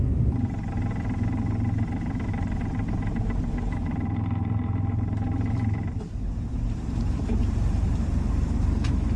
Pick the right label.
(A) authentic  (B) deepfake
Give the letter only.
B